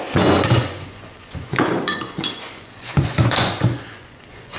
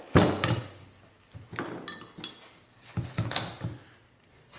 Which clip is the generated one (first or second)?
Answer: first